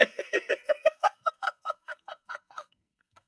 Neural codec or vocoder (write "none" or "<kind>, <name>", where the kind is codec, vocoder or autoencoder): codec, SNAC